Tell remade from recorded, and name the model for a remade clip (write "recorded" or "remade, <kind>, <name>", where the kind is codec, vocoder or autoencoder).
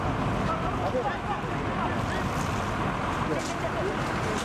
recorded